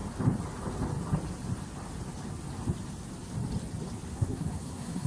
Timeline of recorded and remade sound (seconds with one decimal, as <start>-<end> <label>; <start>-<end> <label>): 0.0-4.1 recorded; 4.1-5.1 remade

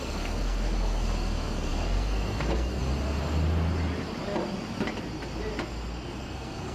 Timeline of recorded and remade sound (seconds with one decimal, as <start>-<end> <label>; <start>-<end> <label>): 0.0-2.8 remade; 2.8-6.2 recorded; 6.2-6.7 remade

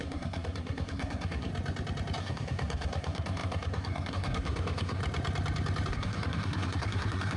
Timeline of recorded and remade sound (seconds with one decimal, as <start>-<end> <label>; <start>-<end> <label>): 0.0-1.5 remade; 1.5-2.2 recorded; 2.2-5.0 remade; 5.0-5.9 recorded; 5.9-7.4 remade

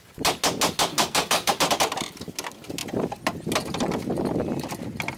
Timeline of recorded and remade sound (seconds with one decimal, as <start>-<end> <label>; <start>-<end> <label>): 0.0-0.9 recorded; 0.9-1.5 remade; 1.5-5.2 recorded

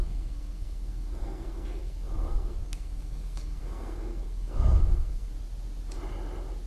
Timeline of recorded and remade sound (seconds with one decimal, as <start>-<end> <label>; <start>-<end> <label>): 0.0-5.3 remade; 5.3-6.7 recorded

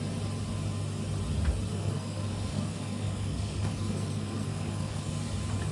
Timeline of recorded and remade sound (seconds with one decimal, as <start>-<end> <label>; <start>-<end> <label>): 0.0-1.7 recorded; 1.7-5.1 remade; 5.1-5.7 recorded